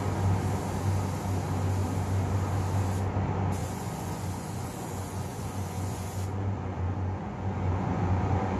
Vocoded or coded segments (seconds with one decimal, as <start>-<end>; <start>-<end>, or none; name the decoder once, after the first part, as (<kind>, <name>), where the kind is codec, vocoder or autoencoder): 3.6-8.6 (vocoder, Vocos)